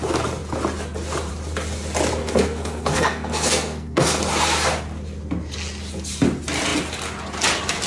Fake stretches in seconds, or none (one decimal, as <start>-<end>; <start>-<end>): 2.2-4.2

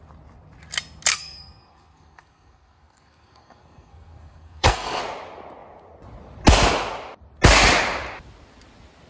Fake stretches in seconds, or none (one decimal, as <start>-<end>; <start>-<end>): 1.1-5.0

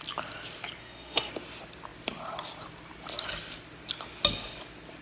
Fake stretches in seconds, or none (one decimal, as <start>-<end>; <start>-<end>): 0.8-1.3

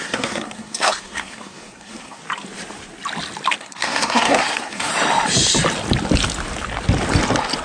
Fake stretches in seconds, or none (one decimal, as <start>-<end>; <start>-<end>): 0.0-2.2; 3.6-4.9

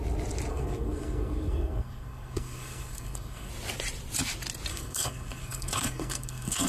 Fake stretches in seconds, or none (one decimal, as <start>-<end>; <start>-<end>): 0.5-3.5; 4.7-6.7

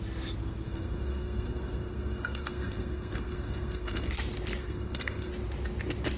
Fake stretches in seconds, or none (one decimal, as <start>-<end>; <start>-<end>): 0.4-4.1; 4.6-5.3